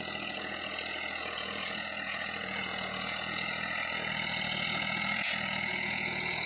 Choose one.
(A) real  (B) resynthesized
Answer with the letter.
B